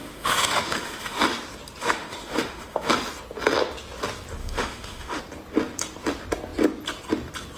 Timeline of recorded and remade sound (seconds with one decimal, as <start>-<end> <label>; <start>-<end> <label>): 0.0-1.2 remade; 1.2-1.8 recorded; 1.8-2.9 remade; 2.9-4.4 recorded; 4.4-5.2 remade; 5.2-7.6 recorded

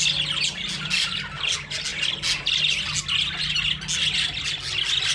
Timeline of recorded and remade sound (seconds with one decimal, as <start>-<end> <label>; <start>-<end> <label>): 0.0-5.1 recorded